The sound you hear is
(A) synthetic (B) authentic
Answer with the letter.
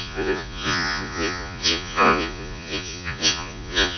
A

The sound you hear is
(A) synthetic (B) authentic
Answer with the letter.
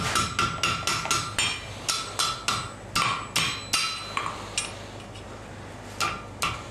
B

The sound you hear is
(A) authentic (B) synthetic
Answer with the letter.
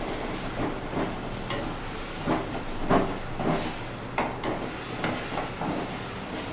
A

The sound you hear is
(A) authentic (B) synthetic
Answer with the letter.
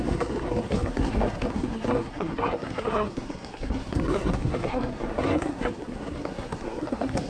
B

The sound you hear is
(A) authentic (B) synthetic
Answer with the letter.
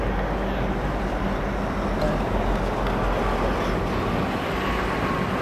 A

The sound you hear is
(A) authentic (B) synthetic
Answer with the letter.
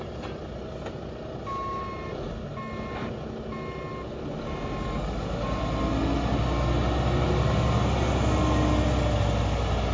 A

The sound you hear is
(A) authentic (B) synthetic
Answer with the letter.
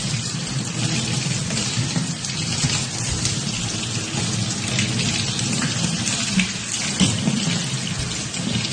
A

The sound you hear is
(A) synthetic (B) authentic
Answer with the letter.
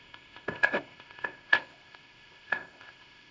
A